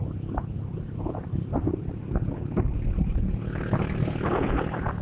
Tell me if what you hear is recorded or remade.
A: recorded